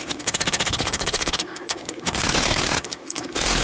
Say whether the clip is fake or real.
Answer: fake